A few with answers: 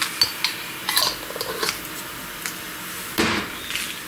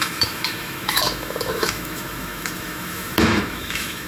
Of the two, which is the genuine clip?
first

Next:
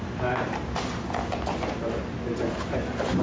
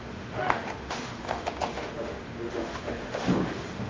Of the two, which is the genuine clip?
first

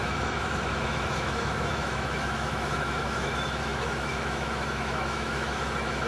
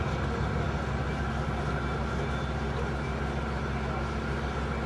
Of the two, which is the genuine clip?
second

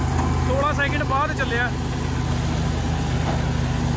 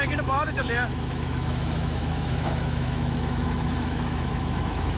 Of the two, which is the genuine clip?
first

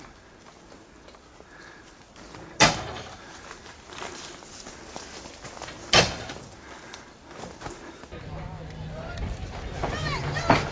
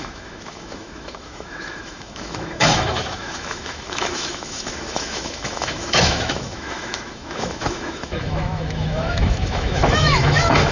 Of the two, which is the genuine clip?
first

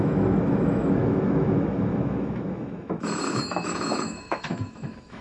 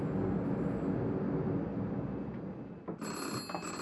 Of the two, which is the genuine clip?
second